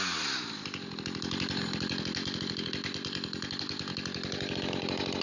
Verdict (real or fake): real